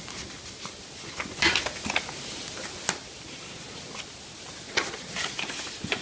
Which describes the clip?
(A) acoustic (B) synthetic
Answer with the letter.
A